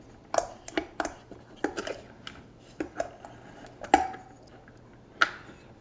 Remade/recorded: recorded